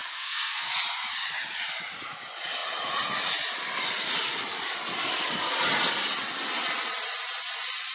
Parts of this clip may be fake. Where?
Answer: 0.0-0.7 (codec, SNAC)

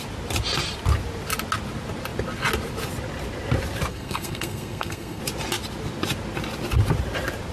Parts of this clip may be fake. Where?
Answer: 3.9-5.2 (codec, SNAC)

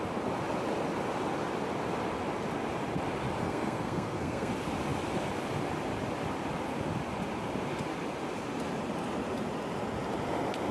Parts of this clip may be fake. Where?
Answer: 3.4-4.5 (codec, SNAC)

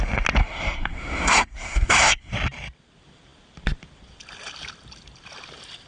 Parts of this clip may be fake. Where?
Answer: 0.4-2.3 (codec, SNAC)

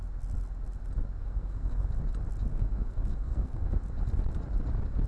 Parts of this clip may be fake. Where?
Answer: 1.2-1.9 (codec, SNAC); 2.5-3.7

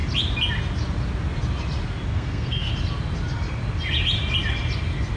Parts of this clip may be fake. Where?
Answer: 2.1-2.7 (codec, SNAC)